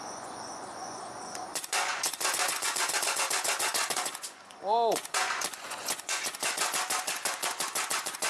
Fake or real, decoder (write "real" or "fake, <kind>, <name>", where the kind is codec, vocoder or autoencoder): fake, vocoder, Vocos